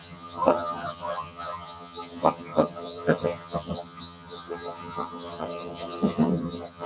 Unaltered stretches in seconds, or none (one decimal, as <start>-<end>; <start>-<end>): none